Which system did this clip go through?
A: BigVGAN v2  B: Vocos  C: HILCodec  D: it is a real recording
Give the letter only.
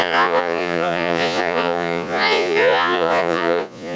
B